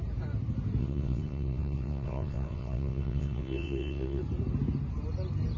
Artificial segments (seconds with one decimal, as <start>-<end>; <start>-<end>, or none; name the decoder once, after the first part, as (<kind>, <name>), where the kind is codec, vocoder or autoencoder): 0.8-4.2 (vocoder, WaveNeXt)